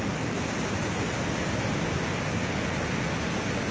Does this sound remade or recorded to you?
recorded